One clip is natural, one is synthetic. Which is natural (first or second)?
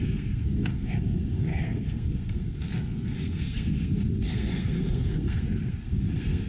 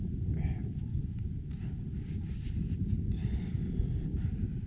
second